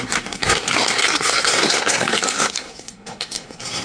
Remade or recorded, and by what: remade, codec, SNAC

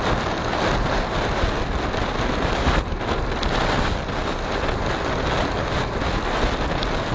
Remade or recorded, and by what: recorded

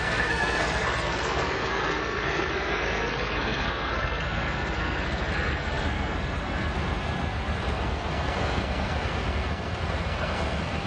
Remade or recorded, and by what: remade, codec, SNAC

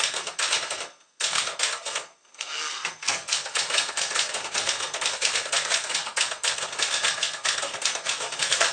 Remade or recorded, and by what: remade, codec, SNAC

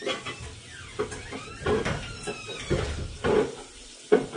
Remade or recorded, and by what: recorded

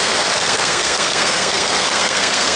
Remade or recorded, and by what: remade, codec, SNAC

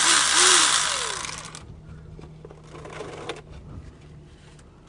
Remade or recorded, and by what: recorded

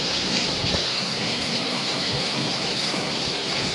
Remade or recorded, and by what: remade, codec, SNAC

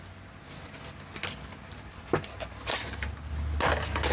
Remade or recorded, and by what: recorded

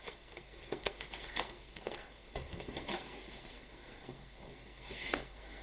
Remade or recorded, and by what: remade, codec, SNAC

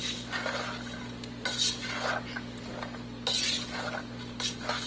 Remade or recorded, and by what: recorded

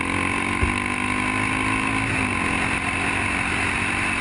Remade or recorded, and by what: recorded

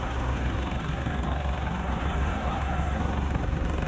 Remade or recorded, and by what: remade, codec, SNAC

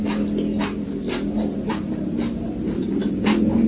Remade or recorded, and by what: recorded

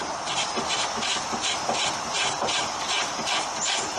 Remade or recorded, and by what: recorded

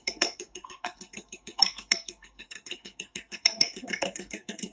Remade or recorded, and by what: remade, codec, SNAC